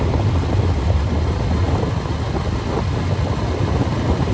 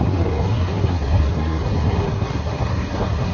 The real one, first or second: first